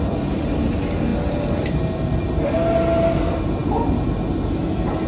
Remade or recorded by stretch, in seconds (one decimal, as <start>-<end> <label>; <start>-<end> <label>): 0.0-5.1 recorded